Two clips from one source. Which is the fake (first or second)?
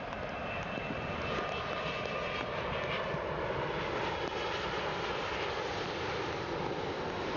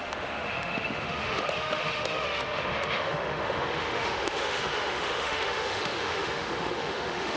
second